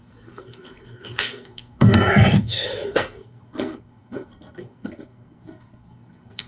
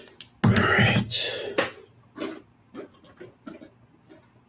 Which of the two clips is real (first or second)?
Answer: second